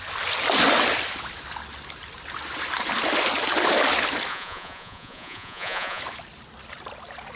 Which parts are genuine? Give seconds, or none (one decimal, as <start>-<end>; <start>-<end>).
0.0-4.3; 6.0-7.4